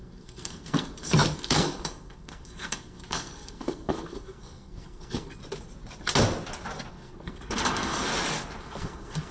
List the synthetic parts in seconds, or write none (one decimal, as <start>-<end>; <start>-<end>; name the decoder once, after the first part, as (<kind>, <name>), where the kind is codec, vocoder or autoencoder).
0.0-5.4 (codec, SNAC); 6.9-8.1; 8.6-9.3